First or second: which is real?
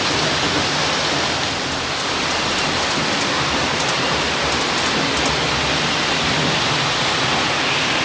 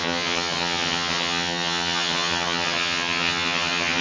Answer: first